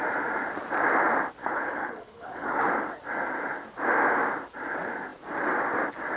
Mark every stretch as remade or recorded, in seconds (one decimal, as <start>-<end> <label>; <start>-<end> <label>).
0.0-1.4 recorded; 1.4-2.7 remade; 2.7-6.2 recorded